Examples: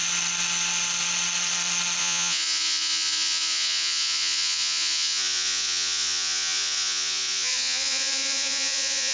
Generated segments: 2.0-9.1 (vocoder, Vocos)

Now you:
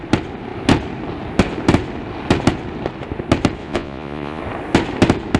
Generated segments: 3.6-4.4 (vocoder, Vocos)

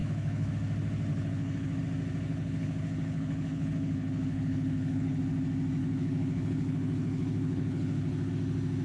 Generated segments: 0.0-0.5 (codec, HILCodec); 1.1-1.8; 2.3-5.2; 5.8-8.3

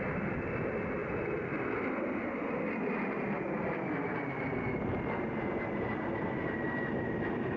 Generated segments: none

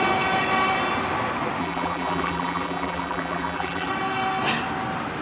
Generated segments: 1.6-3.9 (vocoder, BigVGAN v2)

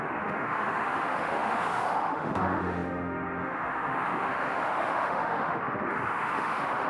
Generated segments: 0.0-6.9 (autoencoder, DAC-VAE)